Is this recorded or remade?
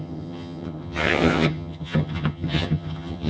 remade